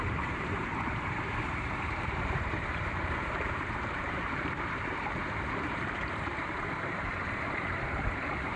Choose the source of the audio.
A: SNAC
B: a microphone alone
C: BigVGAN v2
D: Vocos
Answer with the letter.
C